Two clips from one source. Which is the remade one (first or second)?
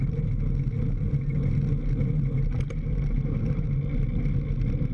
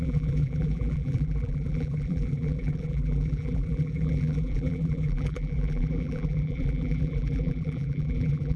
second